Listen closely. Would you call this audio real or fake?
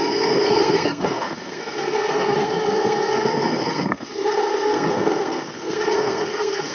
fake